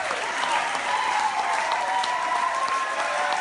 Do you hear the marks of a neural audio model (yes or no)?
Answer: no